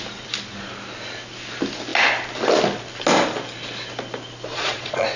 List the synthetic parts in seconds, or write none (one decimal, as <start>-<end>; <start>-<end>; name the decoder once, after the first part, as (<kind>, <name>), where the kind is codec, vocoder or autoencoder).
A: 4.5-5.2 (vocoder, Vocos)